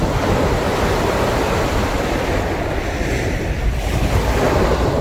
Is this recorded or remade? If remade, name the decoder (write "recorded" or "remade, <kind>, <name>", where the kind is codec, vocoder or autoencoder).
recorded